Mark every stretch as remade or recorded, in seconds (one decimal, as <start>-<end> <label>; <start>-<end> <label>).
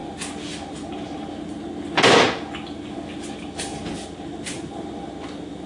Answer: 0.0-5.7 recorded